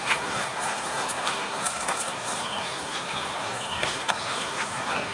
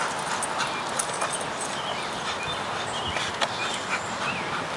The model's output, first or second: first